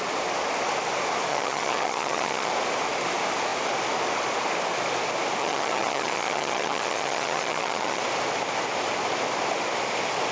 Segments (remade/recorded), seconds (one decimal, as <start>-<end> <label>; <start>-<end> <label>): 0.0-1.3 recorded; 1.3-2.5 remade; 2.5-5.4 recorded; 5.4-8.0 remade; 8.0-10.3 recorded